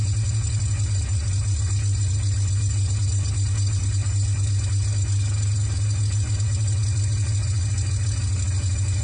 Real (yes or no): yes